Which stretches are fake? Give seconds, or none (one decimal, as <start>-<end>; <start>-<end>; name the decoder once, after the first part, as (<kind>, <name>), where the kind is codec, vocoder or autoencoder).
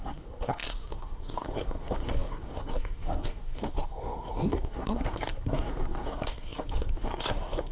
0.0-7.7 (codec, SNAC)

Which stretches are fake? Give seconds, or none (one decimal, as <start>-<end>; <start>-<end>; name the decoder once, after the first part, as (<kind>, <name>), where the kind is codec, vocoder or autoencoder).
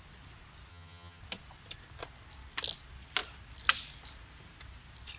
0.7-1.2 (vocoder, HiFi-GAN)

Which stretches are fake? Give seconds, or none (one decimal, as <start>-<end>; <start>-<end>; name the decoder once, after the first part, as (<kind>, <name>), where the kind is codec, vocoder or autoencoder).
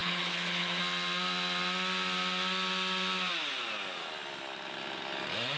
0.0-0.8 (codec, HILCodec)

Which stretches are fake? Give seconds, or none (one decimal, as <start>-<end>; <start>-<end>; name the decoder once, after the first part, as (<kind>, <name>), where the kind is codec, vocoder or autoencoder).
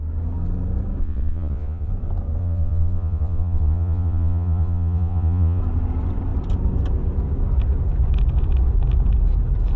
1.0-1.9 (vocoder, Vocos); 2.4-5.6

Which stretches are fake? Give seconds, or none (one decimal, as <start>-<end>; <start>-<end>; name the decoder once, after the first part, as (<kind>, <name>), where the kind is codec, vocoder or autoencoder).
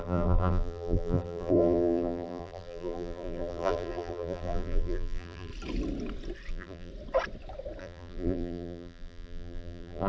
0.0-5.5 (vocoder, BigVGAN v2); 6.5-6.9; 7.8-10.1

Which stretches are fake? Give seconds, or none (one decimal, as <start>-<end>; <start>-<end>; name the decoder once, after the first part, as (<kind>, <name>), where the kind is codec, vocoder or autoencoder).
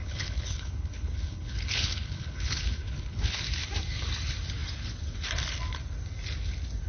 0.0-3.4 (codec, HILCodec)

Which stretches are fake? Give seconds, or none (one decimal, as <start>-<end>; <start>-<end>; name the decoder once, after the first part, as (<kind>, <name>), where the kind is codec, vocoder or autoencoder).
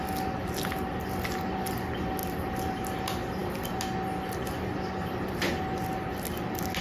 none